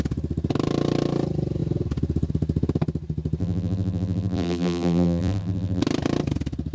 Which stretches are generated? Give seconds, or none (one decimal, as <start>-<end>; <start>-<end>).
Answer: 3.4-5.8